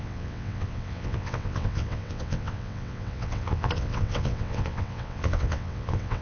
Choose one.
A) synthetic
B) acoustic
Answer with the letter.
A